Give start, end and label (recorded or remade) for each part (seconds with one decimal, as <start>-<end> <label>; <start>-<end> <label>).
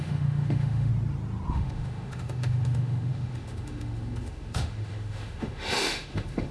0.0-0.9 remade; 0.9-1.5 recorded; 1.5-6.5 remade